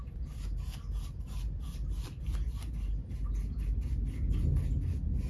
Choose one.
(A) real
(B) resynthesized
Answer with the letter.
A